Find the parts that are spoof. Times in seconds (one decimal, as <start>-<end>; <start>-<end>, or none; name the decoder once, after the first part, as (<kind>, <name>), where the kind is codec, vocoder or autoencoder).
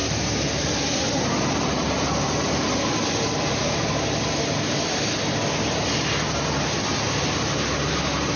none